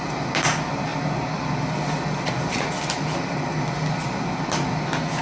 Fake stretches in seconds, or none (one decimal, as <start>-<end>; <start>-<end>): none